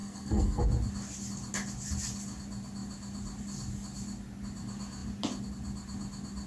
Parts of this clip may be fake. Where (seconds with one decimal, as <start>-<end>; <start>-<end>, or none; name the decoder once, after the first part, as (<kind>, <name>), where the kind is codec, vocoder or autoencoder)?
0.0-0.6 (codec, SNAC)